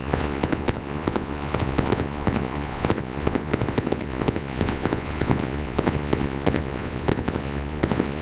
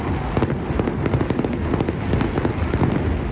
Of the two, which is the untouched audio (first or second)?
second